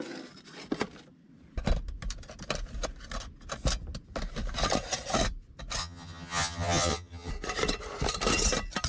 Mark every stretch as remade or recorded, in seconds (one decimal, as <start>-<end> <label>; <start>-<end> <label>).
0.0-5.8 recorded; 5.8-7.3 remade; 7.3-8.9 recorded